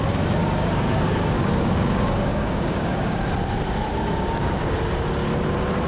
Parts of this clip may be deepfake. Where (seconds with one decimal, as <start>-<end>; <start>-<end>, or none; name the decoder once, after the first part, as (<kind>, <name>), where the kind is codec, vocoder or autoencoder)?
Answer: 0.4-3.2 (codec, DAC); 3.9-4.8